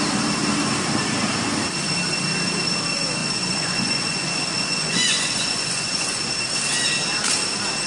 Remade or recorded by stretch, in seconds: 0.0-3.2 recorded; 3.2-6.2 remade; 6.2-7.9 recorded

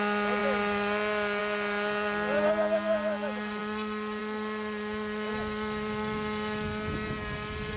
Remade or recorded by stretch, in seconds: 0.0-7.8 recorded